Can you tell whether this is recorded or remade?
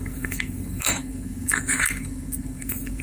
remade